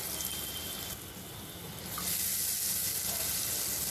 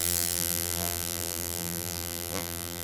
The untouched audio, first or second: first